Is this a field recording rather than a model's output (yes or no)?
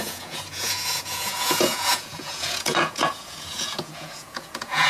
no